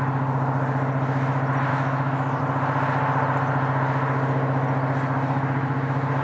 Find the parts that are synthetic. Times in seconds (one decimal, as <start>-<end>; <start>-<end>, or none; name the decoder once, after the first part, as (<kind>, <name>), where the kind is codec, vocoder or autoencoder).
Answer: 1.7-2.4 (autoencoder, DAC-VAE)